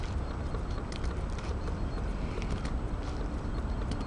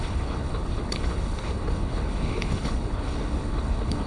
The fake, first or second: second